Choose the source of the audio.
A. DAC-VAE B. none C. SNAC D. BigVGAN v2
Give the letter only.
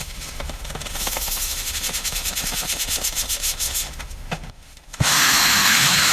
A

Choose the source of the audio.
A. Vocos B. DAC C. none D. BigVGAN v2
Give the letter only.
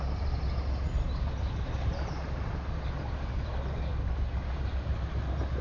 C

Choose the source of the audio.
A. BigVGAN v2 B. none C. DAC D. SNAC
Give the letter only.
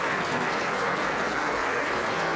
D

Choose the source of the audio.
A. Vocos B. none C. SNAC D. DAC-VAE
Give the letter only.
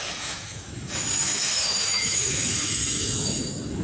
D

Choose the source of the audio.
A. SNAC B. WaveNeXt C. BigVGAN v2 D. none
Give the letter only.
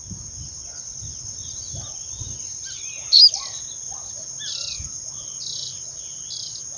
D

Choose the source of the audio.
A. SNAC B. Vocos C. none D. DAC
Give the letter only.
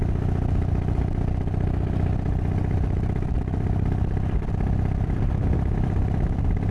C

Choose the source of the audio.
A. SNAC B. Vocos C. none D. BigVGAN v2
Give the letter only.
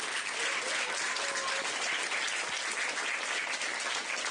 C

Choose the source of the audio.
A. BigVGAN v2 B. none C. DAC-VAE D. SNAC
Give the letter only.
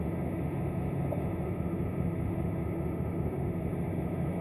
C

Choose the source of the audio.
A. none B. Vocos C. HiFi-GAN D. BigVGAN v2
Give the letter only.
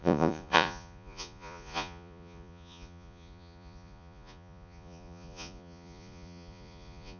B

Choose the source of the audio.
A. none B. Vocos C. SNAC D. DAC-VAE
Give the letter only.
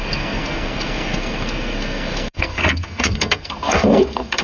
C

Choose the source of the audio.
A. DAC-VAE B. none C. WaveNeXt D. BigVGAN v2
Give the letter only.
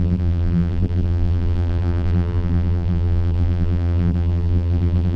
D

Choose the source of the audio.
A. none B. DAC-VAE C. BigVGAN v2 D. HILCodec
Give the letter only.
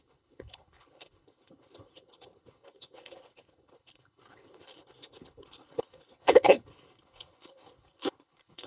D